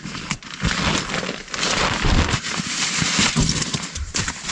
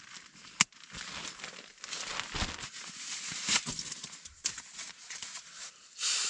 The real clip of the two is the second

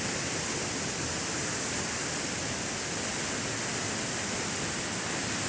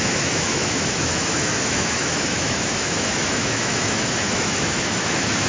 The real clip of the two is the first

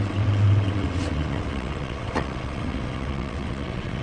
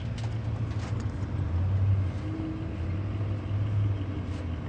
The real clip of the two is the second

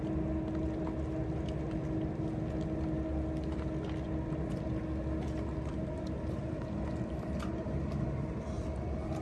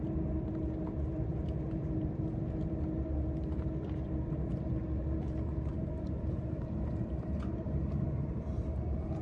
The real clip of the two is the first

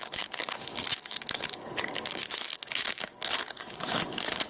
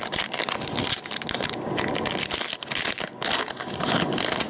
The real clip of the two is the second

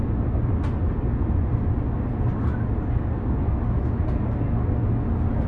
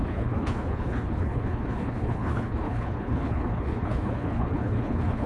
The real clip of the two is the first